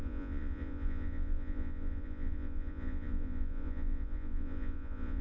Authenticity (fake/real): fake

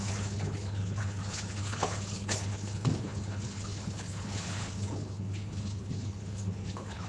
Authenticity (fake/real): fake